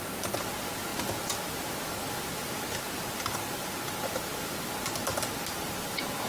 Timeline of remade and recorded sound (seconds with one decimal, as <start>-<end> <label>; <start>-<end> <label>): 0.0-0.9 recorded; 0.9-4.7 remade; 4.7-6.3 recorded